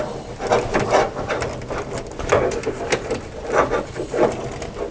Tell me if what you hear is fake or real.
real